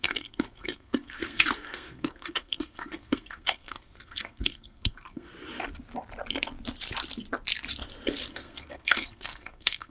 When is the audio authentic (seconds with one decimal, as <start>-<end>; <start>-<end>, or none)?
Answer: 5.3-8.3